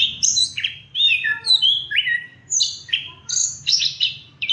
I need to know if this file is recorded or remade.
remade